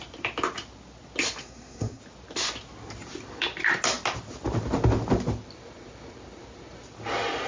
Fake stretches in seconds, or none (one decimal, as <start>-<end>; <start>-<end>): 1.4-2.0